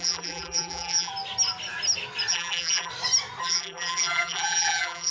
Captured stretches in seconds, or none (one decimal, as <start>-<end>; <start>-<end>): 1.1-2.3; 2.9-3.4

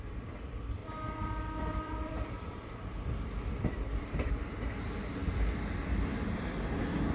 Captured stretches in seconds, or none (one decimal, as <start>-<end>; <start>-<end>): 0.0-0.8; 4.3-7.1